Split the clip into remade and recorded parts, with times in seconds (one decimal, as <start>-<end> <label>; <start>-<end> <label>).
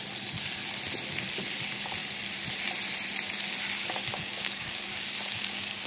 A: 0.0-4.1 recorded; 4.1-5.9 remade